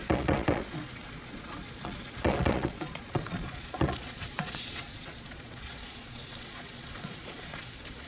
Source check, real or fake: fake